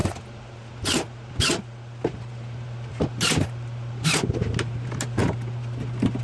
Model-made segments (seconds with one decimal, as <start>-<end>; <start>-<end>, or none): none

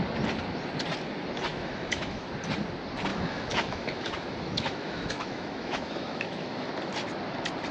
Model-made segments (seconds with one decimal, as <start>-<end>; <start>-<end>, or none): 1.5-2.3; 3.1-6.7

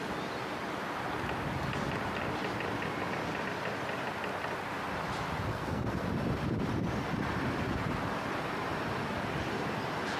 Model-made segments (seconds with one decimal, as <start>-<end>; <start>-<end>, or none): 5.5-6.1

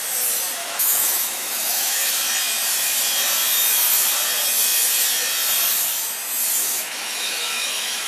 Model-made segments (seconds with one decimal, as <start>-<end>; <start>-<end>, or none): 0.6-2.1; 6.6-8.1

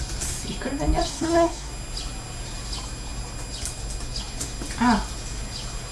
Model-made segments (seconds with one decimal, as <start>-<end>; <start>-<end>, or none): 1.1-1.7